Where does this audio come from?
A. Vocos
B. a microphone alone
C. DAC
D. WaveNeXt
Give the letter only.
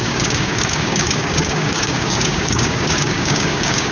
C